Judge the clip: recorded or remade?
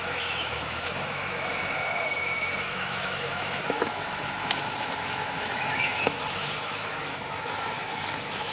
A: remade